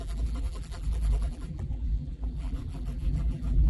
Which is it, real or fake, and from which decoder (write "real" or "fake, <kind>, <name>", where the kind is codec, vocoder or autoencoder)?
fake, vocoder, BigVGAN v2